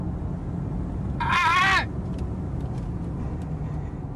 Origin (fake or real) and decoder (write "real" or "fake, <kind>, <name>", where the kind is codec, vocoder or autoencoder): real